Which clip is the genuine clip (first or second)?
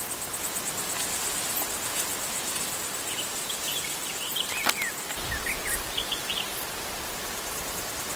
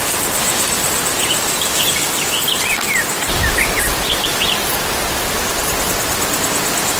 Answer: second